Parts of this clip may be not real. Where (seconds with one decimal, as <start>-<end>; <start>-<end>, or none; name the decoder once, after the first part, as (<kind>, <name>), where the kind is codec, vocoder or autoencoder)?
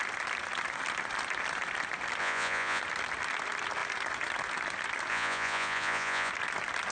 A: 2.2-2.8 (vocoder, Vocos); 5.1-6.3